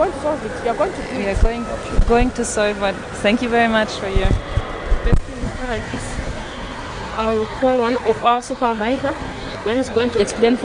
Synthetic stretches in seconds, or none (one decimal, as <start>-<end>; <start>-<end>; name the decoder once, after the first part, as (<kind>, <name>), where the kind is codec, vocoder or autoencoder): 5.4-10.2 (codec, SNAC)